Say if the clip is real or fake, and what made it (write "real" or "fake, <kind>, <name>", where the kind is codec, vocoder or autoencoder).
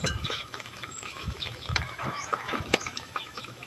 fake, autoencoder, DAC-VAE